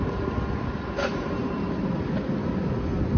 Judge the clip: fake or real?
real